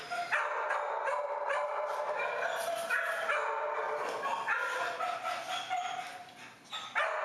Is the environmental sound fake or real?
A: real